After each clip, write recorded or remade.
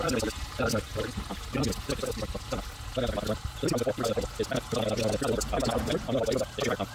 recorded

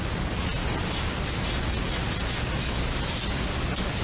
recorded